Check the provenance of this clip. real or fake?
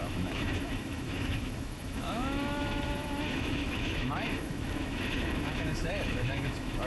fake